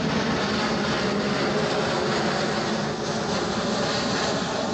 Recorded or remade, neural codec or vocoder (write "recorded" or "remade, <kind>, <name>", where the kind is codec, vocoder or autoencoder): recorded